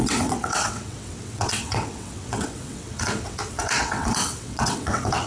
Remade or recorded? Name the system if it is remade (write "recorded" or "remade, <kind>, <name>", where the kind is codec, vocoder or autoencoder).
remade, vocoder, WaveNeXt